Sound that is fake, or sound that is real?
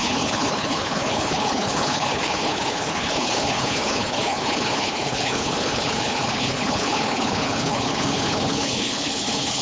fake